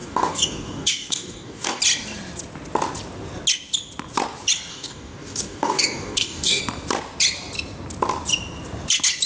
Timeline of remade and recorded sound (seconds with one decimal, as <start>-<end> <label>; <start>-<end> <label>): 0.0-1.8 remade; 1.8-4.7 recorded; 4.7-6.6 remade; 6.6-9.3 recorded